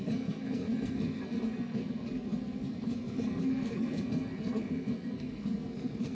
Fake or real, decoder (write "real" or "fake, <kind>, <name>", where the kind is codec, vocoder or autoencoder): fake, codec, SNAC